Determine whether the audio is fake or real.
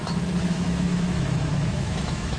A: fake